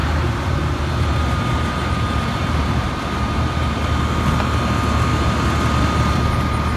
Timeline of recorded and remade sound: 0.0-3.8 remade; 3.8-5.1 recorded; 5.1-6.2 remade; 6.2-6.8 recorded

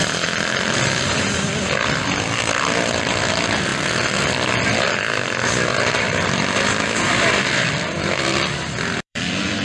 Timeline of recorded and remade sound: 0.0-1.4 recorded; 1.4-9.6 remade

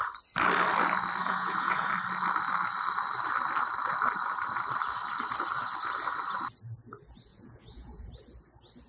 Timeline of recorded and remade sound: 0.0-1.2 recorded; 1.2-1.9 remade; 1.9-7.3 recorded; 7.3-8.1 remade; 8.1-8.9 recorded